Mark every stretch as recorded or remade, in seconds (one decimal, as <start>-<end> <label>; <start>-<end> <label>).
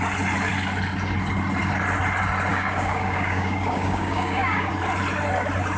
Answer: 0.0-2.5 recorded; 2.5-4.7 remade; 4.7-5.8 recorded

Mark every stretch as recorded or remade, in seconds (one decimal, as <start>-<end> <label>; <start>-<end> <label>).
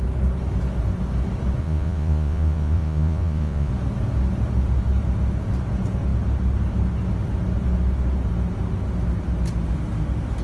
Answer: 0.0-1.6 recorded; 1.6-3.7 remade; 3.7-10.4 recorded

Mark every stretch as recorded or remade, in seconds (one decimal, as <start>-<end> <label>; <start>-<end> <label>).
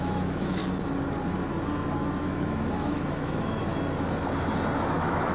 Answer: 0.0-0.6 remade; 0.6-2.2 recorded; 2.2-3.7 remade; 3.7-4.8 recorded; 4.8-5.3 remade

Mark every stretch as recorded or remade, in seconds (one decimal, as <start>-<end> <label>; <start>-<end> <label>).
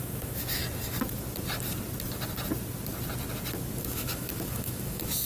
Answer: 0.0-0.6 remade; 0.6-3.8 recorded; 3.8-5.3 remade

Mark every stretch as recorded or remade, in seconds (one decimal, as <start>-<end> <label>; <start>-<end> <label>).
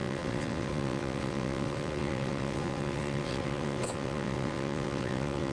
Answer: 0.0-5.5 remade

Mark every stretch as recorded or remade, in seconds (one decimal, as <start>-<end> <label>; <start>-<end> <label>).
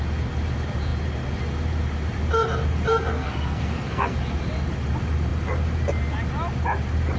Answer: 0.0-2.9 recorded; 2.9-4.2 remade; 4.2-7.2 recorded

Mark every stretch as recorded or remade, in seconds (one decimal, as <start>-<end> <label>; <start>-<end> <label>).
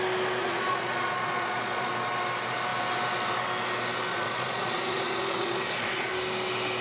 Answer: 0.0-0.4 recorded; 0.4-1.9 remade; 1.9-4.1 recorded; 4.1-6.1 remade; 6.1-6.8 recorded